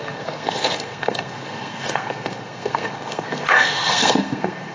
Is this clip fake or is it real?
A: fake